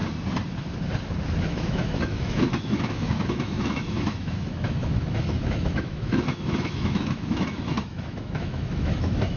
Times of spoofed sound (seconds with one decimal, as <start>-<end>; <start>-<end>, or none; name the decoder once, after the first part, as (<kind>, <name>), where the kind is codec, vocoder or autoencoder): 1.4-9.4 (autoencoder, DAC-VAE)